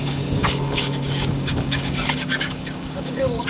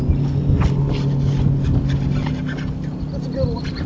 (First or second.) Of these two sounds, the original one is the second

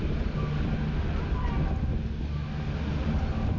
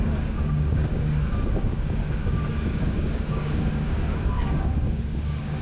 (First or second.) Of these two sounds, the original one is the first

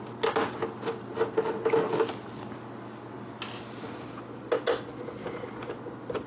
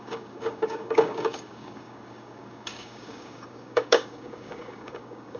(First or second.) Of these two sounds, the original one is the first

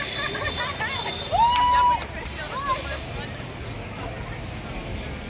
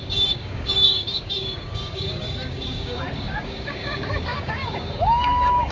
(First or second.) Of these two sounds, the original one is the first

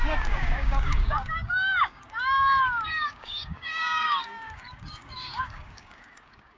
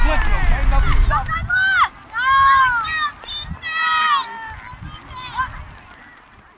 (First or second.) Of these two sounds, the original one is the second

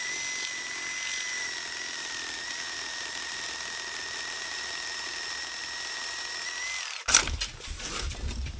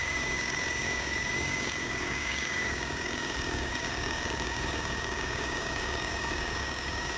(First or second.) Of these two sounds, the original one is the first